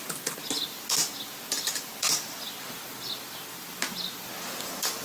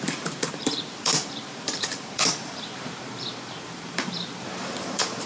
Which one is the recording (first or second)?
first